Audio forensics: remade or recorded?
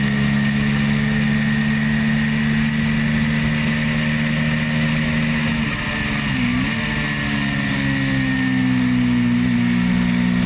recorded